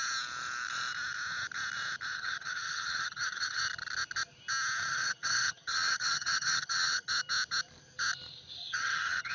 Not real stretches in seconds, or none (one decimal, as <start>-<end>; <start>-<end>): 2.1-3.6; 4.9-7.1; 8.6-9.3